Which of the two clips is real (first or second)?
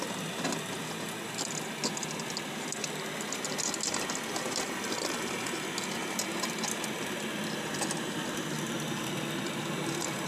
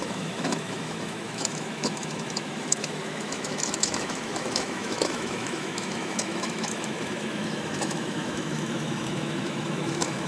first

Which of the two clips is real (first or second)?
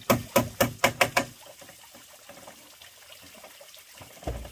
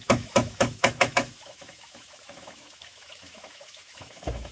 first